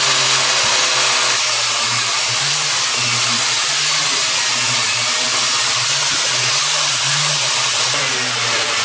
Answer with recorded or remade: recorded